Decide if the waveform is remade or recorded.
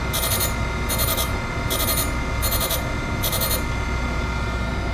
recorded